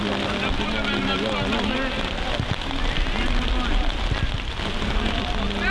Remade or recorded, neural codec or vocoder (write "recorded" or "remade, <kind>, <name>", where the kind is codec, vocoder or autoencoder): recorded